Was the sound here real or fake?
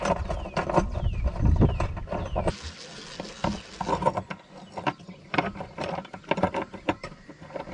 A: real